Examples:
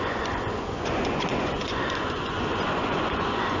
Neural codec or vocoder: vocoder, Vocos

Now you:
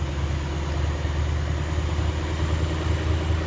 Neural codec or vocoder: none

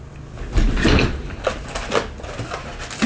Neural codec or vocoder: none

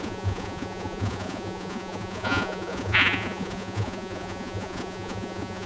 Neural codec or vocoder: vocoder, Vocos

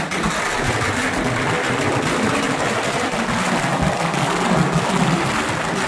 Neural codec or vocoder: none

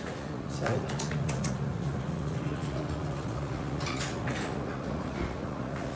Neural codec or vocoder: vocoder, Vocos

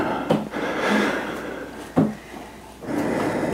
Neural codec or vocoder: none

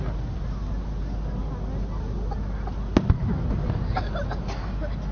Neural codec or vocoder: none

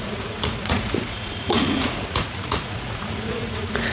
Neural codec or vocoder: vocoder, Vocos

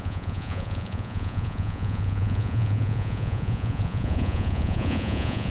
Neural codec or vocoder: vocoder, Vocos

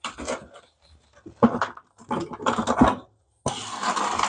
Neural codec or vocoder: none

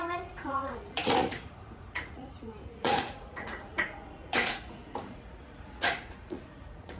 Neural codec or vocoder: vocoder, Vocos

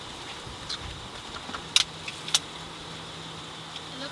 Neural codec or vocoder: none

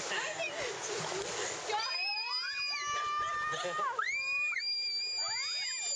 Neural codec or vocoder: none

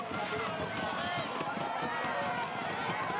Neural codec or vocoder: none